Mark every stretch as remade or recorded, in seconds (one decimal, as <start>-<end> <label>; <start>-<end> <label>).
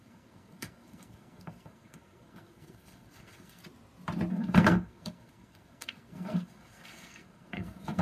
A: 0.0-3.6 remade; 3.6-4.3 recorded; 4.3-8.0 remade